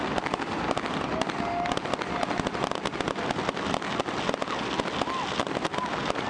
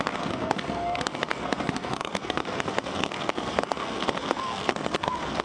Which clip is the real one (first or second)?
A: first